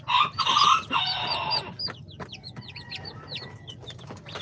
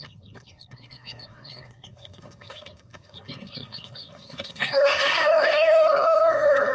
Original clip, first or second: first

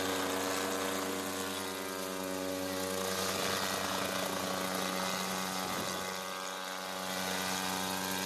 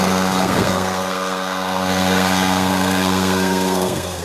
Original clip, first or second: first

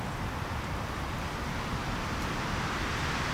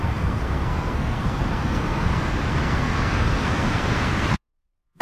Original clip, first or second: first